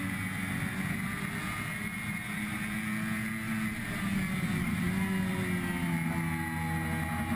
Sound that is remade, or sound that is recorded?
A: recorded